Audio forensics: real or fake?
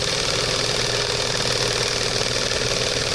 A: real